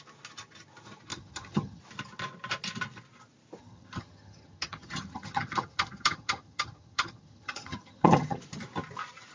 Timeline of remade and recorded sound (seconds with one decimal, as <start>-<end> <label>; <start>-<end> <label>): 0.0-1.1 recorded; 1.1-1.8 remade; 1.8-3.6 recorded; 3.6-8.4 remade; 8.4-9.3 recorded